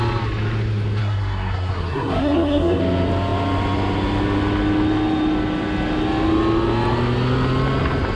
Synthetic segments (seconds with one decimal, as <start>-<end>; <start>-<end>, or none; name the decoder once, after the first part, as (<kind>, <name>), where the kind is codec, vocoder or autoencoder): 1.0-2.8 (codec, SNAC)